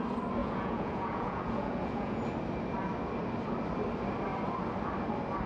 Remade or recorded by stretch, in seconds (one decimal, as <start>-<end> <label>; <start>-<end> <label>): 0.0-0.4 recorded; 0.4-2.2 remade; 2.2-5.5 recorded